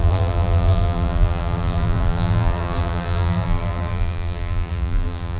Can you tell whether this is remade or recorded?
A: remade